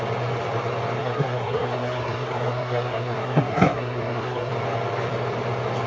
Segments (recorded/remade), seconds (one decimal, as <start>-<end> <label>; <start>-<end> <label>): 0.0-1.0 recorded; 1.0-4.5 remade; 4.5-5.9 recorded